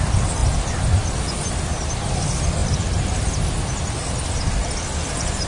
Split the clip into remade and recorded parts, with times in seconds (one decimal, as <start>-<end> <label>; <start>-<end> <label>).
0.0-5.5 recorded